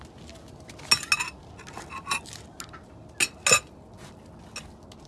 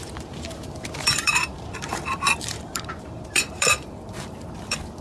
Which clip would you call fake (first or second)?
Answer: second